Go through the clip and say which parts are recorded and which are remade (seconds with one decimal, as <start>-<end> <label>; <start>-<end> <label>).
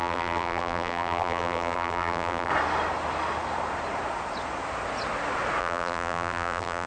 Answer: 0.0-2.5 remade; 2.5-5.6 recorded; 5.6-6.9 remade